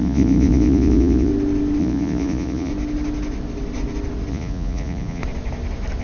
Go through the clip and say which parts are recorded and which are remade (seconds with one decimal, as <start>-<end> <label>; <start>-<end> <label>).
0.0-1.3 remade; 1.3-1.8 recorded; 1.8-2.7 remade; 2.7-4.3 recorded; 4.3-5.2 remade; 5.2-6.0 recorded